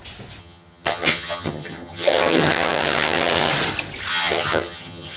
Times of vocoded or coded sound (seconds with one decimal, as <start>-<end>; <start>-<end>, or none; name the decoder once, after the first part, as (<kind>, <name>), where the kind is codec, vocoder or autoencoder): 0.4-3.5 (vocoder, HiFi-GAN); 4.1-5.2